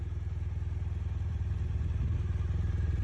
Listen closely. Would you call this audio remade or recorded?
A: recorded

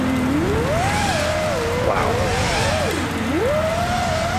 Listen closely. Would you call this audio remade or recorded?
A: recorded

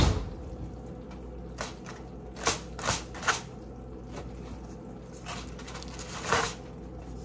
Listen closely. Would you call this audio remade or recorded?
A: recorded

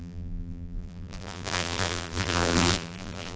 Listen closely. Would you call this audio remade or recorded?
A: remade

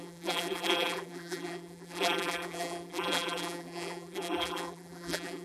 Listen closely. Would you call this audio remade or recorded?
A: remade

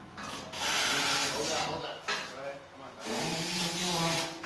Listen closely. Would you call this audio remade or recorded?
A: recorded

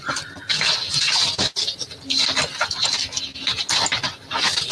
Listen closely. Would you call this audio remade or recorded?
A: recorded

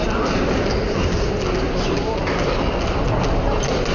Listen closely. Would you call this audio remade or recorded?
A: recorded